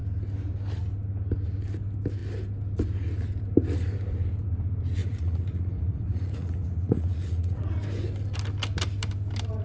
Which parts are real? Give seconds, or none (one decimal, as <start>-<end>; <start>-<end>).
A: 0.0-5.0; 7.7-9.6